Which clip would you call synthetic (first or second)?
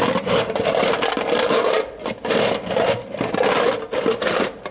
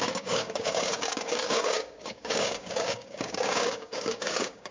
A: second